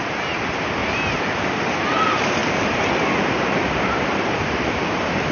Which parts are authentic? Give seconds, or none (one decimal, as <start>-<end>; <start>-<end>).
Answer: 2.4-3.2